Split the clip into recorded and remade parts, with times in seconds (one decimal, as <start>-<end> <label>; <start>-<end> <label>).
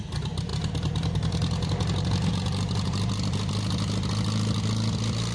0.0-5.3 recorded